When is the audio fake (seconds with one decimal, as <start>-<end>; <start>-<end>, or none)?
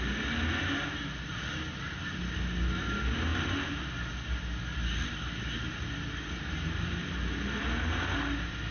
none